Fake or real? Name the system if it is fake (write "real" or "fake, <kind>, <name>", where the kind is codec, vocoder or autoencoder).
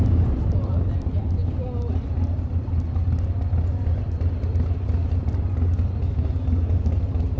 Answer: real